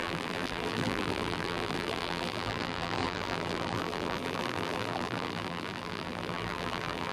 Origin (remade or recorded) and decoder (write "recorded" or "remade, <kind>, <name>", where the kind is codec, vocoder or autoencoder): remade, vocoder, BigVGAN v2